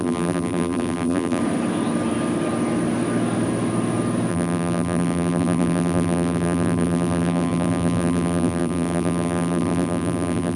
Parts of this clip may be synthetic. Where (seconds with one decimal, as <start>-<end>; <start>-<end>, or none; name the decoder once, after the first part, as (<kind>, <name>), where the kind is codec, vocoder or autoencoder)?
0.0-1.4 (vocoder, BigVGAN v2); 4.3-10.6